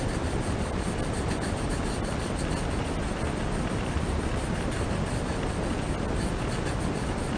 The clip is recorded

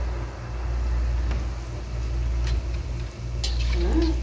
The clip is recorded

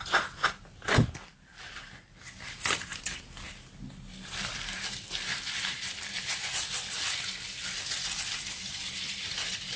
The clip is remade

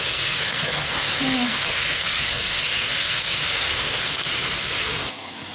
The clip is remade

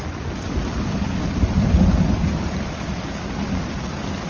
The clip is recorded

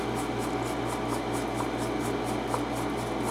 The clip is recorded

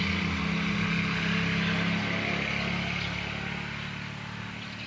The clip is recorded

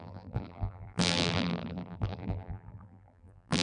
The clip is remade